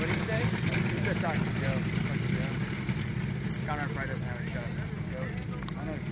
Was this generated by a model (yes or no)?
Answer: no